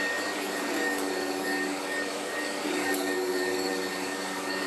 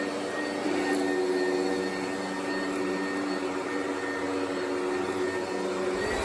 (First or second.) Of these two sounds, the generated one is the first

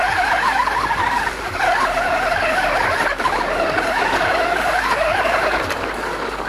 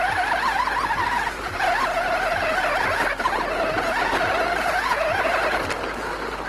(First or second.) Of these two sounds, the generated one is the first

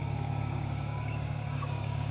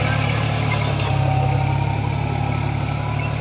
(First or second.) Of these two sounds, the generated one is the first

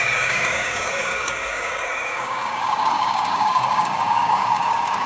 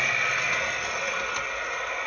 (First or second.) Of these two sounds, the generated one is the first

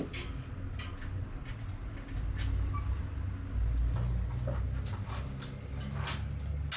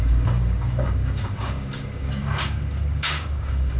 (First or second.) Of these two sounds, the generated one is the second